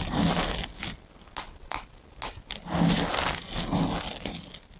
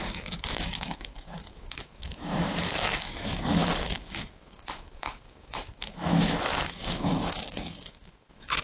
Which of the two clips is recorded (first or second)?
first